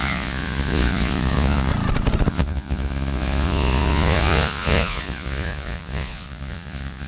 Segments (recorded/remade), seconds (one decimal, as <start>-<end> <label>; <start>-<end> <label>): 0.0-1.7 remade; 1.7-2.3 recorded; 2.3-7.1 remade